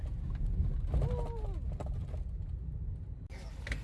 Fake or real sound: real